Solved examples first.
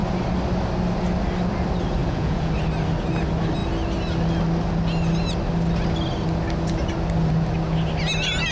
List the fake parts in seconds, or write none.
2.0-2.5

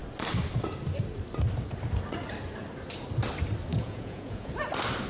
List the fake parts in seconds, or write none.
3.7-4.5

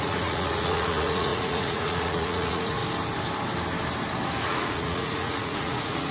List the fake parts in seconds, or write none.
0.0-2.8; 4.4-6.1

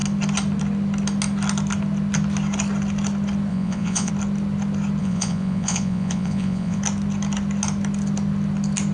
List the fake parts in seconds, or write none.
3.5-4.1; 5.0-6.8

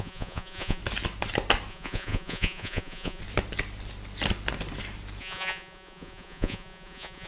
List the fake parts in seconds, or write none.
0.0-0.8; 1.7-3.2; 5.2-7.3

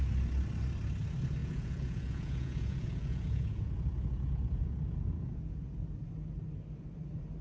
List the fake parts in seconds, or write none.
1.4-5.8

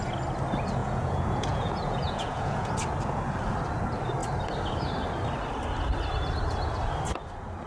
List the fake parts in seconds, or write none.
0.8-2.7